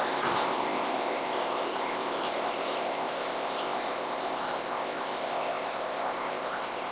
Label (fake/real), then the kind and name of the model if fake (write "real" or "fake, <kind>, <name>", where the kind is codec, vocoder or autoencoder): fake, codec, ZipCodec